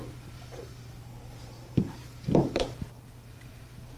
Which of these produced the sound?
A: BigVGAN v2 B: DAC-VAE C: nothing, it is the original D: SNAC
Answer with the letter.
A